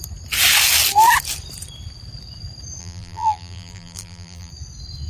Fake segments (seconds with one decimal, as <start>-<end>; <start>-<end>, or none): 2.8-4.5